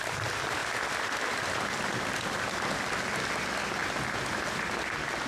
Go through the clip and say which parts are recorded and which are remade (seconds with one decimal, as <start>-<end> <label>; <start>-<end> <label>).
0.0-5.3 recorded